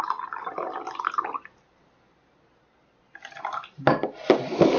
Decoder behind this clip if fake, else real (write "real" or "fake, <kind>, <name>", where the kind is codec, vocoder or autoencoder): real